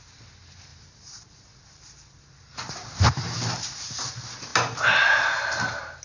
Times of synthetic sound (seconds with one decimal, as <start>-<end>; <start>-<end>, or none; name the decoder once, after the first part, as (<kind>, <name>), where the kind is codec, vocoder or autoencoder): 0.7-4.1 (vocoder, BigVGAN v2); 4.5-6.0